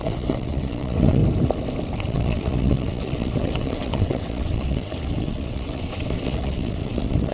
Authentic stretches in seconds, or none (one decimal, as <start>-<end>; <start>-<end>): 1.2-2.0